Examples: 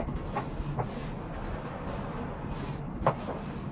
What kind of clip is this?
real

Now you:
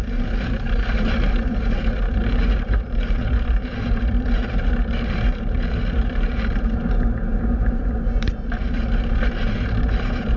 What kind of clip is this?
fake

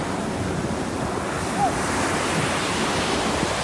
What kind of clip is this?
real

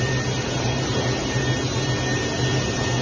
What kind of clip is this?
real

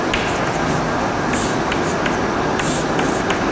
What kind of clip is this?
real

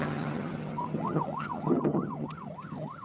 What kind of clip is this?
fake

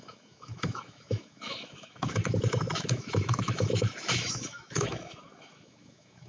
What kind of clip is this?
fake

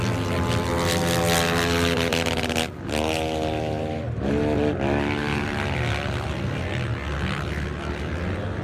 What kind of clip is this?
real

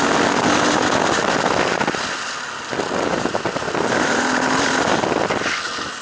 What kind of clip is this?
real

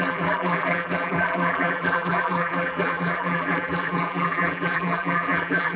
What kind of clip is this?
fake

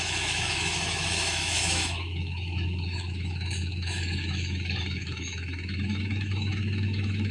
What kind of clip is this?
fake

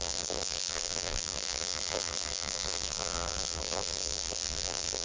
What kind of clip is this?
fake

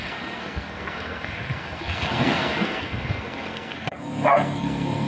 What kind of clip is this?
fake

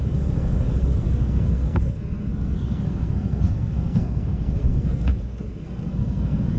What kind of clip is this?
fake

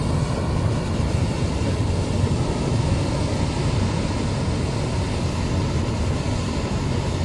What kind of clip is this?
real